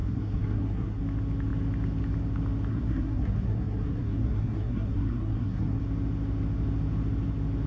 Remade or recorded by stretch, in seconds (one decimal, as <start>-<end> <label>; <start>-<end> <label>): 0.0-1.0 remade; 1.0-2.7 recorded; 2.7-5.8 remade; 5.8-7.7 recorded